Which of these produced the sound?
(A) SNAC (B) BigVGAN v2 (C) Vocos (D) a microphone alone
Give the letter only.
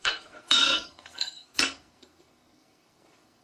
A